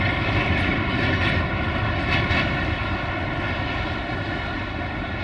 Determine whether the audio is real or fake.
real